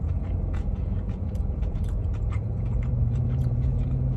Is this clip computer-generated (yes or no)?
yes